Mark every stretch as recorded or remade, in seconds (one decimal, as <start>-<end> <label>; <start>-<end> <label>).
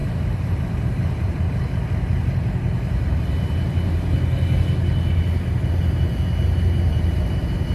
0.0-1.5 remade; 1.5-6.9 recorded; 6.9-7.7 remade